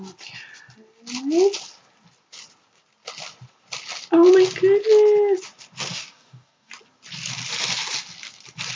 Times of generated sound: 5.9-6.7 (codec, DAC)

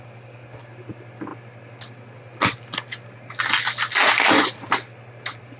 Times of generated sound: none

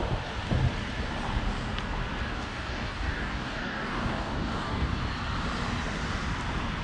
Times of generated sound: 2.3-5.0 (codec, DAC)

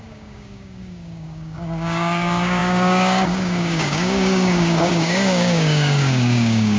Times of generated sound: 0.0-6.8 (codec, DAC)

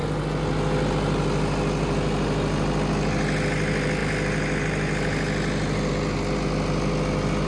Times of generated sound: none

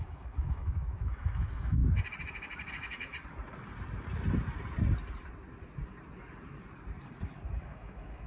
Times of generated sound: 0.0-1.8 (autoencoder, DAC-VAE); 2.7-3.1; 7.6-8.3